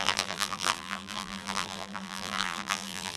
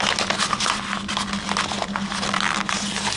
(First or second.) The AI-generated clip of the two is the first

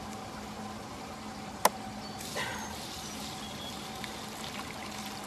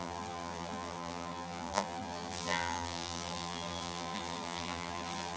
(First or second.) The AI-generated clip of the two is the second